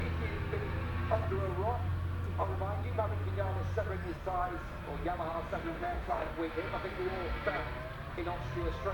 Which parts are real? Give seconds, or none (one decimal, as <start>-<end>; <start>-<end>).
0.0-5.6; 6.3-8.9